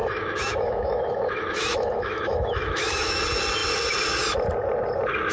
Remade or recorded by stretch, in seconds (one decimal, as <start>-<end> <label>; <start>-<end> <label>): 0.0-3.2 remade; 3.2-5.3 recorded